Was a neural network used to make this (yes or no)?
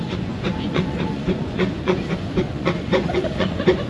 yes